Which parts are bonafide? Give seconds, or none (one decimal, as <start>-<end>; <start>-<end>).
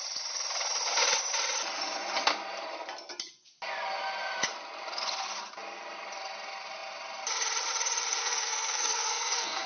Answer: 0.0-8.2